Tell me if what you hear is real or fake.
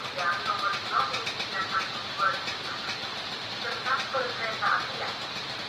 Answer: real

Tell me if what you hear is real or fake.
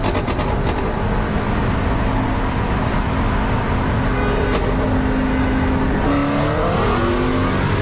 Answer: real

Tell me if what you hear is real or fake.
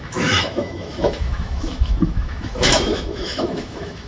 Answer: fake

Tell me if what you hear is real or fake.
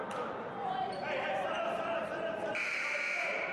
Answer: real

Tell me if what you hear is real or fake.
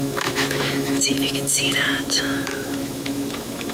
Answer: fake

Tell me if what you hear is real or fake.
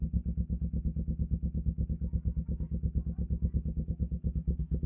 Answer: real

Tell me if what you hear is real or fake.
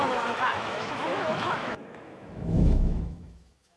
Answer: fake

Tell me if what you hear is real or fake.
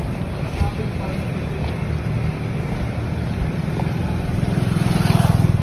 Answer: real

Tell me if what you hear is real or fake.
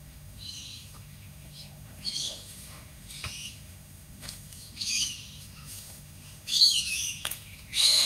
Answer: fake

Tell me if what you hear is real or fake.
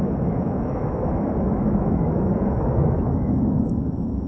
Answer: fake